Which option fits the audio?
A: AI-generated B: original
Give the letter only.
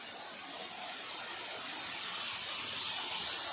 B